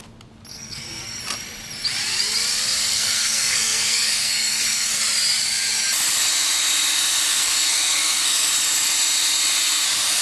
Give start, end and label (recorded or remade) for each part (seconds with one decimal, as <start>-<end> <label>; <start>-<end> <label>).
0.0-0.5 recorded; 0.5-1.2 remade; 1.2-2.8 recorded; 2.8-5.0 remade; 5.0-7.3 recorded; 7.3-8.5 remade; 8.5-10.2 recorded

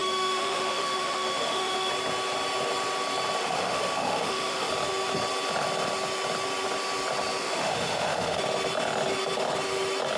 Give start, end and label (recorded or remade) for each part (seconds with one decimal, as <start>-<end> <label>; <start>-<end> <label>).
0.0-1.9 remade; 1.9-3.4 recorded; 3.4-4.7 remade; 4.7-7.4 recorded; 7.4-8.4 remade; 8.4-10.2 recorded

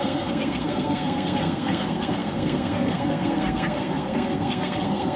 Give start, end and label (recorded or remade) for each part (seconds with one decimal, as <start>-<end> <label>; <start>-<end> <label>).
0.0-5.2 remade

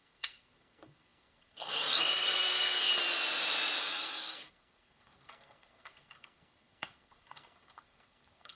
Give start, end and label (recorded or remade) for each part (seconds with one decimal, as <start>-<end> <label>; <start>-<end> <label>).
0.0-2.9 remade; 2.9-3.8 recorded; 3.8-8.6 remade